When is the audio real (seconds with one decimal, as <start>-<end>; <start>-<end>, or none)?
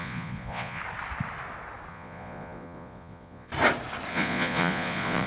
0.8-1.9; 3.5-4.1